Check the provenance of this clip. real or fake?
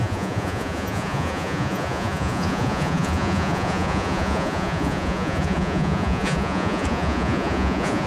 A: fake